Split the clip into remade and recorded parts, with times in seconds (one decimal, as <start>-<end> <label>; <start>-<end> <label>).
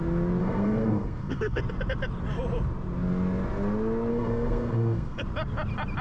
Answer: 0.0-0.4 recorded; 0.4-1.6 remade; 1.6-4.1 recorded; 4.1-5.2 remade; 5.2-6.0 recorded